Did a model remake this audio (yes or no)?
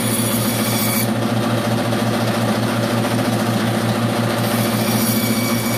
no